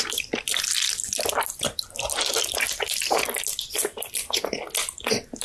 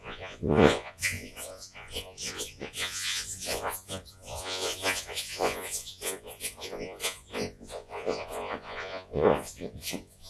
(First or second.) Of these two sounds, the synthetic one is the second